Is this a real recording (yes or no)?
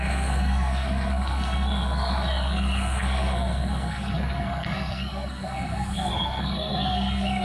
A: no